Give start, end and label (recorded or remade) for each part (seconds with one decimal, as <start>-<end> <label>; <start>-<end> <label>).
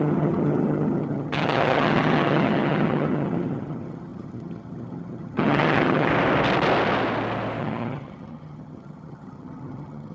0.0-6.1 remade; 6.1-7.6 recorded; 7.6-10.1 remade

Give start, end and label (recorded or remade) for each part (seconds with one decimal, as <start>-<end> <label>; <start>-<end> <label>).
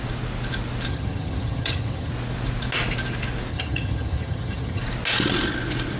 0.0-0.9 recorded; 0.9-2.1 remade; 2.1-3.5 recorded; 3.5-4.8 remade; 4.8-6.0 recorded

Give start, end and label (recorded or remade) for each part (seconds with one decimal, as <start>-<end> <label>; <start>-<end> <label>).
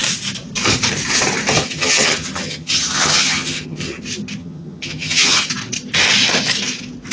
0.0-1.6 recorded; 1.6-4.0 remade; 4.0-4.4 recorded; 4.4-5.5 remade; 5.5-7.1 recorded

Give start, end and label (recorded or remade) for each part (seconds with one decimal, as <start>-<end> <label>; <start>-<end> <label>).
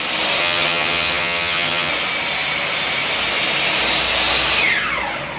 0.0-0.4 recorded; 0.4-1.9 remade; 1.9-5.4 recorded